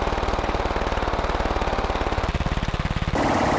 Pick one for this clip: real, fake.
real